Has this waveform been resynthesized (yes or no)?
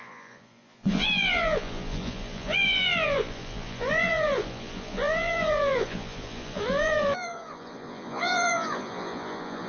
yes